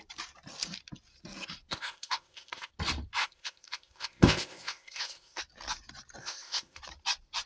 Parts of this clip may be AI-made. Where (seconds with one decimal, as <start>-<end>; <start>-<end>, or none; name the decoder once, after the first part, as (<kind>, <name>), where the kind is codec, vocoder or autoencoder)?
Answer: 1.7-2.7 (codec, ZipCodec); 3.2-5.4; 6.2-6.8